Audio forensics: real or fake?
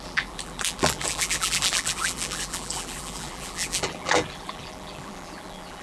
fake